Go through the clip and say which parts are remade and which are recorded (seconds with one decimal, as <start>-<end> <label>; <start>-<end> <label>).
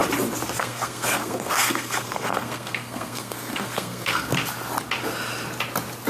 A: 0.0-0.6 recorded; 0.6-4.3 remade; 4.3-6.1 recorded